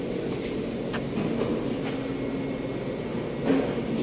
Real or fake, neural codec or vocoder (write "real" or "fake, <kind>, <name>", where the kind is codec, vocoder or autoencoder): real